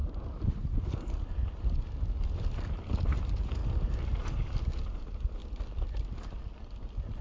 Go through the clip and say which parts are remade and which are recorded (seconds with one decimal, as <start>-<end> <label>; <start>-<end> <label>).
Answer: 0.0-7.2 recorded